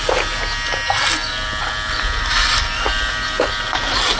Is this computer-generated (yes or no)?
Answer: no